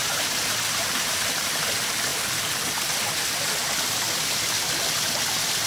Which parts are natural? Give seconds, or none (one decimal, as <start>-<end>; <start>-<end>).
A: 1.5-5.7